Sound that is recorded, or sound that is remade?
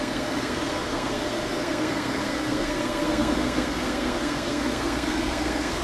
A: remade